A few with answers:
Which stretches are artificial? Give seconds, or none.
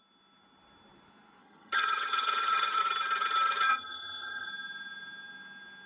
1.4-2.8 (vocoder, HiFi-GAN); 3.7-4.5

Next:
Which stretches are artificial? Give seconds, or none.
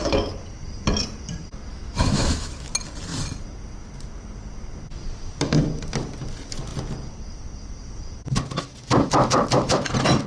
1.7-2.7 (autoencoder, DAC-VAE)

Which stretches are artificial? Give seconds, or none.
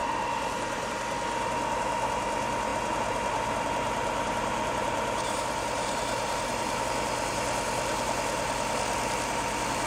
0.0-0.9 (vocoder, BigVGAN v2); 2.7-6.8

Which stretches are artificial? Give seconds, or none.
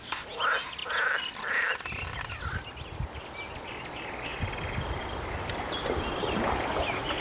none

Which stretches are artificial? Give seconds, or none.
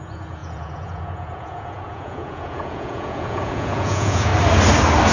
0.0-4.3 (vocoder, Vocos)